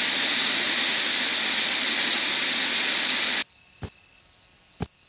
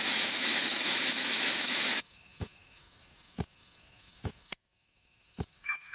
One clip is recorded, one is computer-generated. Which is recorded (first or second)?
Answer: first